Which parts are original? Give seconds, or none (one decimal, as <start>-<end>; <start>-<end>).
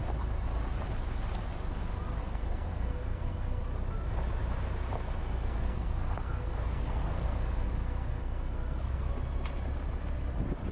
0.0-2.2; 3.6-5.2; 9.1-10.7